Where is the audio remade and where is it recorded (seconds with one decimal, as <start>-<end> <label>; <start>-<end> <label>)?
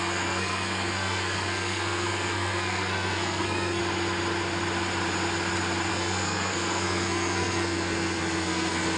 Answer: 0.0-3.8 remade; 3.8-5.9 recorded; 5.9-9.0 remade